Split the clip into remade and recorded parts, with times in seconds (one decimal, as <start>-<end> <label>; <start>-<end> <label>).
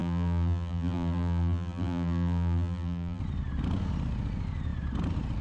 0.0-3.2 remade; 3.2-5.4 recorded